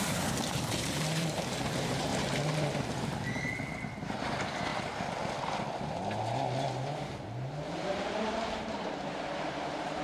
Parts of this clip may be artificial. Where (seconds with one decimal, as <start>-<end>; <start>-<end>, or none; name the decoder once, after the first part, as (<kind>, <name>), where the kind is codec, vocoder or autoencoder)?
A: 0.0-2.1 (vocoder, BigVGAN v2); 3.7-4.7; 8.2-10.0